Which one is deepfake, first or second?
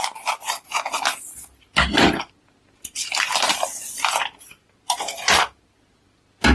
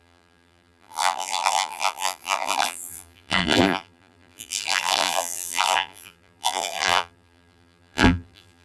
second